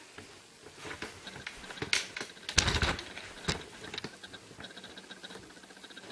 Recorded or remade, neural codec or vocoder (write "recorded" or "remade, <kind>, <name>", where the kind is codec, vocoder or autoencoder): recorded